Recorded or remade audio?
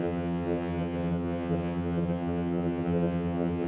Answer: remade